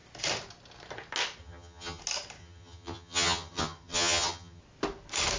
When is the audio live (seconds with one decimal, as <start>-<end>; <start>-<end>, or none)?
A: 0.0-1.4; 2.0-2.4; 4.6-5.4